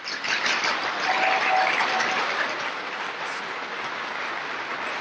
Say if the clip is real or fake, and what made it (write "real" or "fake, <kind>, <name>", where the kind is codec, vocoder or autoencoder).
real